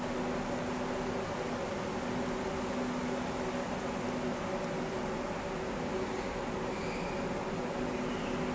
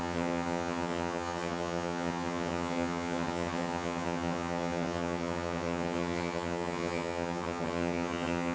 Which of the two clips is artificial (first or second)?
second